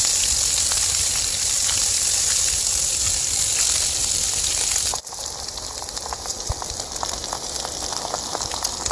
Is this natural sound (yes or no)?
yes